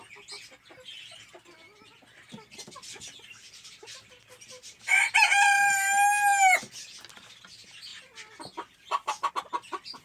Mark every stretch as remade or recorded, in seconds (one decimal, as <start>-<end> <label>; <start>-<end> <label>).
0.0-10.0 recorded